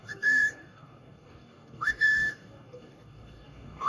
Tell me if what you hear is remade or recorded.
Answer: remade